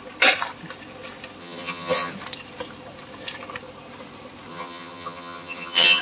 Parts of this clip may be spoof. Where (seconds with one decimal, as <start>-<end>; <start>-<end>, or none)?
1.4-2.1; 4.5-6.0